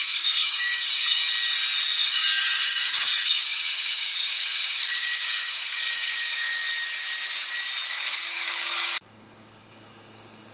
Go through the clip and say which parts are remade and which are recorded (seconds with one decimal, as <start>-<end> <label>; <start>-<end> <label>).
0.0-1.2 remade; 1.2-2.0 recorded; 2.0-6.6 remade; 6.6-7.9 recorded; 7.9-10.5 remade